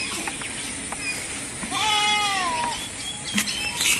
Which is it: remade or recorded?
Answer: recorded